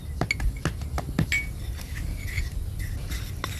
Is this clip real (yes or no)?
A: yes